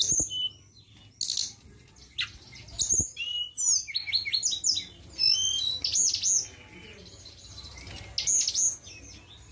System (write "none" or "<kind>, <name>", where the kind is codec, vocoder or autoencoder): none